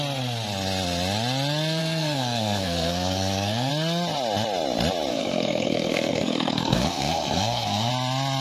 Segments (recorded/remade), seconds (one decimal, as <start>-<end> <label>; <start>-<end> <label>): 0.0-1.8 recorded; 1.8-3.7 remade; 3.7-5.1 recorded; 5.1-7.9 remade; 7.9-8.4 recorded